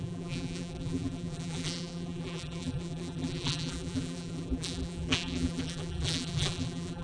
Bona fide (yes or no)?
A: no